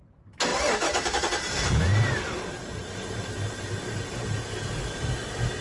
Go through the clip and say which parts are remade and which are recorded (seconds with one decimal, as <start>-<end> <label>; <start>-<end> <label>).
0.0-0.5 recorded; 0.5-3.3 remade; 3.3-5.6 recorded